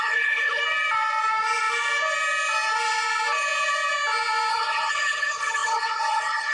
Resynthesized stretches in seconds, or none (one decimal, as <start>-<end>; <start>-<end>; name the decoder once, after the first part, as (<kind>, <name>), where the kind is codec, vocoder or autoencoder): 0.0-0.6 (codec, HILCodec); 4.5-6.5